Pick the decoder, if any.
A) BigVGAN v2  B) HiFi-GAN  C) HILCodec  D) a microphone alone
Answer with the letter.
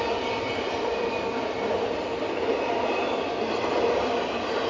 D